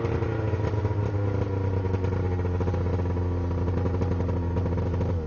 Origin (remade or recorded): recorded